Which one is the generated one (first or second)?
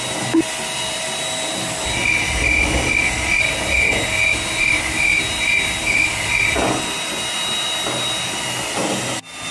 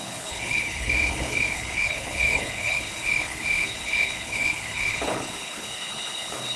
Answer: second